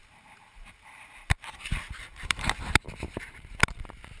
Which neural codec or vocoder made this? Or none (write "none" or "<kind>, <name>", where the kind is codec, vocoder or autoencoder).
vocoder, BigVGAN v2